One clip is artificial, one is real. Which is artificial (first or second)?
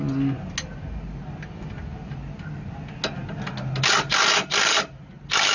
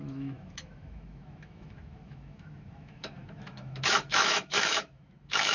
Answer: second